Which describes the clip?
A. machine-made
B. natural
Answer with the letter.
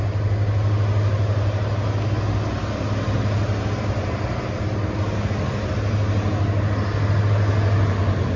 B